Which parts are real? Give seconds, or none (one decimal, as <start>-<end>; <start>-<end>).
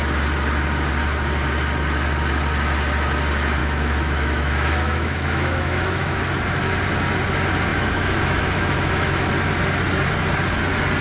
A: 0.0-3.6; 6.2-7.7; 9.3-11.0